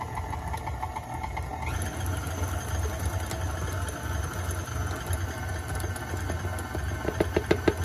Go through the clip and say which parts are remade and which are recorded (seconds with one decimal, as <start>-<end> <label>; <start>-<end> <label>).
0.0-7.8 recorded